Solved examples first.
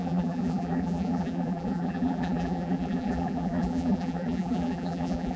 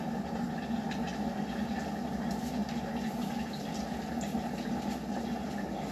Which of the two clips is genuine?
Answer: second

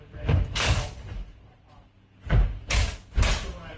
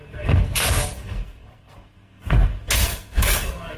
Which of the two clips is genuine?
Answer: first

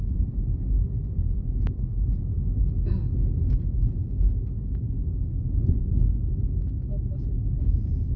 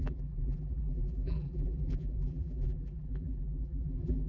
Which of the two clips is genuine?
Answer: first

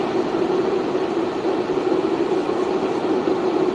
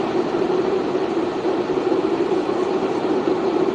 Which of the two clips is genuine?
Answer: first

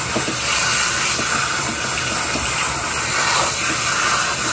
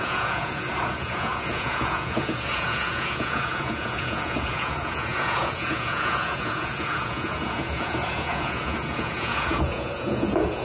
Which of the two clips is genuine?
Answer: first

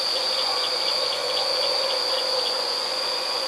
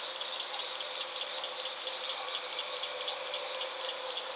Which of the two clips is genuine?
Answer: second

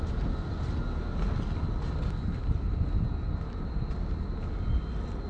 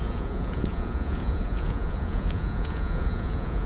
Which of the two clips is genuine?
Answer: first